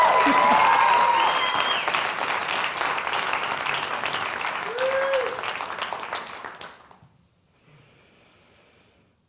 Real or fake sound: real